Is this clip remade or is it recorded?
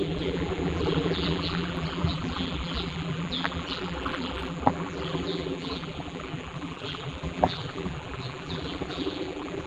remade